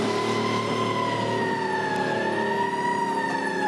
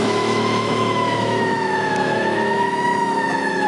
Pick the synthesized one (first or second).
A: second